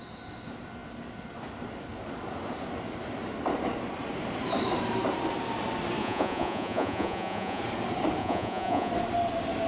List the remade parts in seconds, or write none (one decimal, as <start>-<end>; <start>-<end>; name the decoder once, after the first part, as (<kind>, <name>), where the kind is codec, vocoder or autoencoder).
6.0-7.6 (vocoder, Vocos); 8.2-8.9